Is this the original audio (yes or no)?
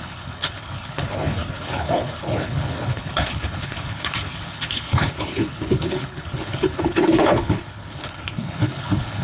no